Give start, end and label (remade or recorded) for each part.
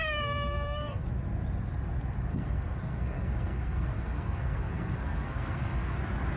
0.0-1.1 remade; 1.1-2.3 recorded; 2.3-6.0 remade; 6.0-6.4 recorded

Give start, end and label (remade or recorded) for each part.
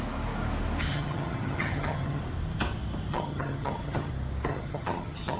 0.0-0.9 recorded; 0.9-2.2 remade; 2.2-3.1 recorded; 3.1-4.1 remade; 4.1-4.5 recorded; 4.5-5.4 remade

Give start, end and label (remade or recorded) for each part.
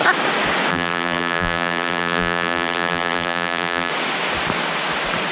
0.0-0.7 recorded; 0.7-3.9 remade; 3.9-5.3 recorded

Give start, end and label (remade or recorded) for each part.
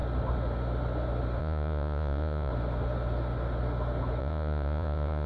0.0-1.4 recorded; 1.4-2.5 remade; 2.5-4.2 recorded; 4.2-5.3 remade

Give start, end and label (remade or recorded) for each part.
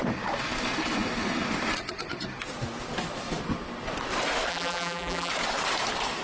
0.0-4.5 recorded; 4.5-5.3 remade; 5.3-6.2 recorded